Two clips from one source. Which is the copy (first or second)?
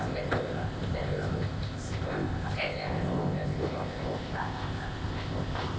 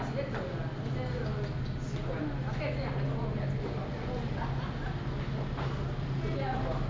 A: first